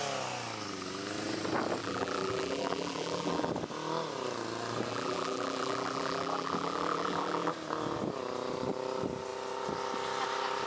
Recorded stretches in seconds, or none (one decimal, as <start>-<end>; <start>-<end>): 0.0-1.8; 3.5-4.9; 7.5-10.7